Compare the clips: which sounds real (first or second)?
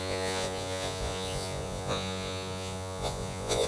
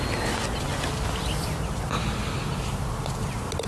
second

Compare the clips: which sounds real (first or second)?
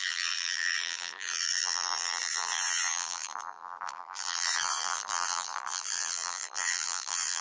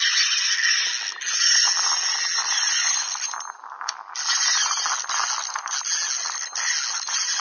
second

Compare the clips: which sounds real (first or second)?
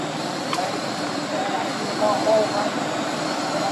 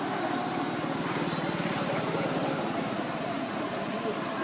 first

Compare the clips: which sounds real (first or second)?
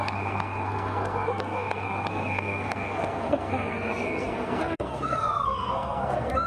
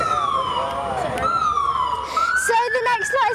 second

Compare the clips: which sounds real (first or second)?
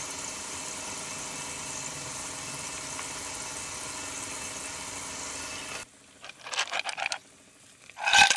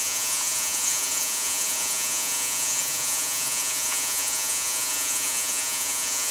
first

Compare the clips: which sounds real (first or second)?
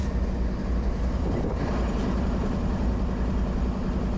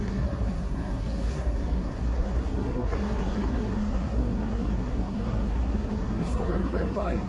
first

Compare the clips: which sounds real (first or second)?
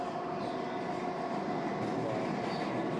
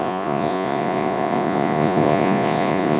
first